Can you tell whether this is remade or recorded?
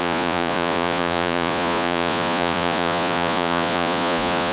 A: remade